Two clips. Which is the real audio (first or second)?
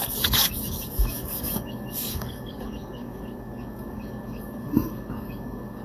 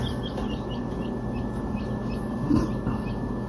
second